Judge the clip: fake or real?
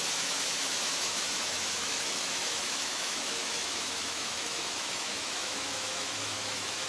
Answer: fake